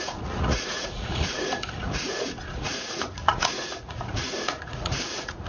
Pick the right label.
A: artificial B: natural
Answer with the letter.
A